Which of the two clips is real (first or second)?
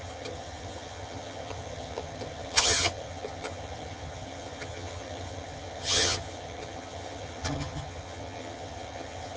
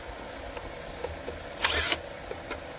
second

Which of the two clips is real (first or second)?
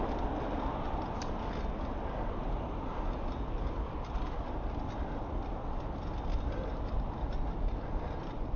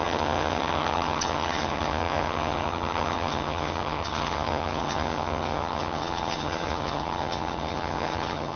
first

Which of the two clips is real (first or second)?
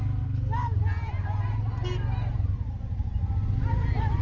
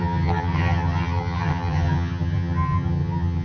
first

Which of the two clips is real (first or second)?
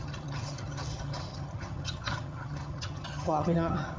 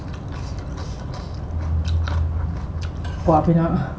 second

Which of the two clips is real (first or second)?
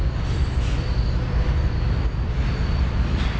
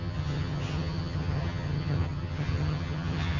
first